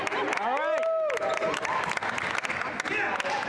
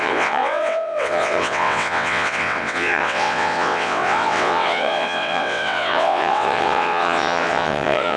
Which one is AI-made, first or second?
second